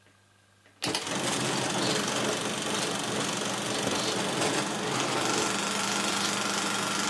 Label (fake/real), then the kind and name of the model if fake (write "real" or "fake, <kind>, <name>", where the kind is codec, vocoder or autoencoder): real